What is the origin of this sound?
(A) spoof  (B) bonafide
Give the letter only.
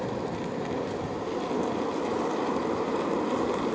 B